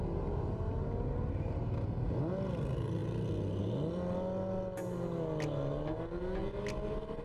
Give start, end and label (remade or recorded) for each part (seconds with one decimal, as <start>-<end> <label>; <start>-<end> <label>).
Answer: 0.0-7.2 recorded